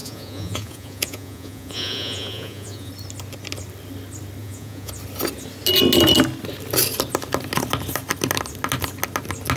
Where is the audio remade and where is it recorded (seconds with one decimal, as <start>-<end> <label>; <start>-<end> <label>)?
0.0-2.9 remade; 2.9-4.4 recorded; 4.4-4.9 remade; 4.9-9.6 recorded